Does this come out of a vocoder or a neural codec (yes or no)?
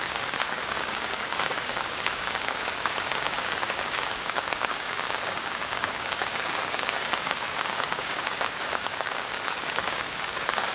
yes